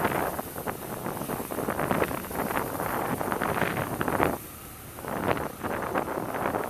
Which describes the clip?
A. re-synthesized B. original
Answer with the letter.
B